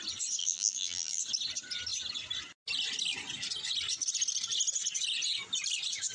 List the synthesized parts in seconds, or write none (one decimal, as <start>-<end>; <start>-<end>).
0.4-1.2

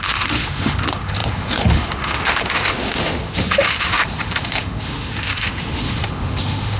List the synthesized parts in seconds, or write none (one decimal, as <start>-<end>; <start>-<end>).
0.0-6.8

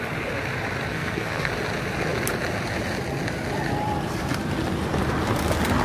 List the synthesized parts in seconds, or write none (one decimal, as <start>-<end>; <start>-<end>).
0.9-1.5

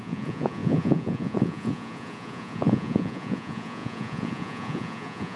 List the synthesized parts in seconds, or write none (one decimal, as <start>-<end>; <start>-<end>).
0.0-5.4

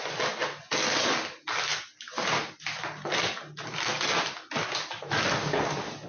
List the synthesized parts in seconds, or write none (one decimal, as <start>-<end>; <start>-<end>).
none